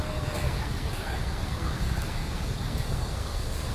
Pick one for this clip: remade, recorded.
remade